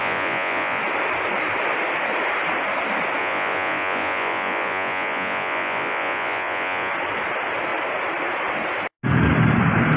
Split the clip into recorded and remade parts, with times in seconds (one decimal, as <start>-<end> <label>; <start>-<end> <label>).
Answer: 0.0-0.8 remade; 0.8-3.2 recorded; 3.2-6.9 remade; 6.9-10.0 recorded